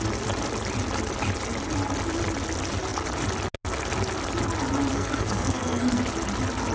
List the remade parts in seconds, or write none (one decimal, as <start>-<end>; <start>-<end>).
4.9-6.0